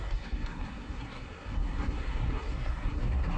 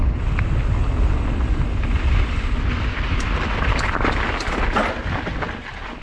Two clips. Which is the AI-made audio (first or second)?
first